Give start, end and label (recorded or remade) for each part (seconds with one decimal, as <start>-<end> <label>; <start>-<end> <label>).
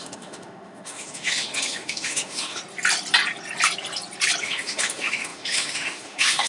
0.0-2.6 remade; 2.6-4.4 recorded; 4.4-6.5 remade